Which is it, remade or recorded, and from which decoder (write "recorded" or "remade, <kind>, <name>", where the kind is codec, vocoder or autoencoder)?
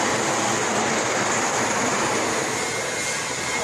remade, vocoder, BigVGAN v2